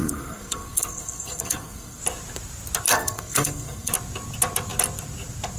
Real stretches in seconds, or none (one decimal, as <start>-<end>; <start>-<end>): 2.0-2.9; 3.9-5.6